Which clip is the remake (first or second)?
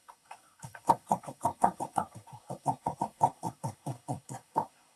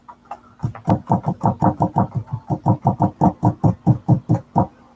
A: first